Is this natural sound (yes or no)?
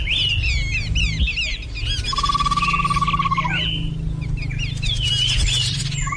yes